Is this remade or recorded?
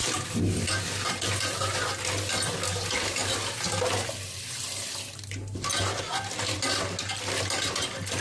recorded